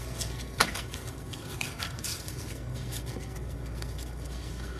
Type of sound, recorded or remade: remade